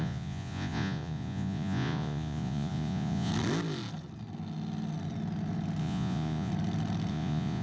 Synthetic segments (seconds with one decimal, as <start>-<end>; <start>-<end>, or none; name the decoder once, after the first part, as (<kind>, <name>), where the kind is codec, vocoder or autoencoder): 0.0-3.3 (vocoder, Vocos); 5.8-6.5; 7.1-7.6